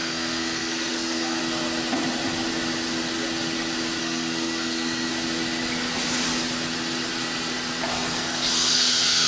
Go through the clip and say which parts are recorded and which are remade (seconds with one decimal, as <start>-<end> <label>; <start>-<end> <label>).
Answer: 0.0-1.4 remade; 1.4-4.0 recorded; 4.0-5.1 remade; 5.1-7.9 recorded; 7.9-9.3 remade